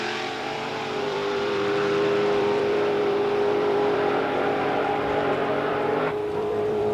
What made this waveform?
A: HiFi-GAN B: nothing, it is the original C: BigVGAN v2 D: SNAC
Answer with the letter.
C